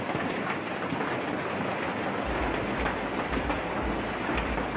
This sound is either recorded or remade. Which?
recorded